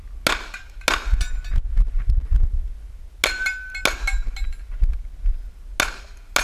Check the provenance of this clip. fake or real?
real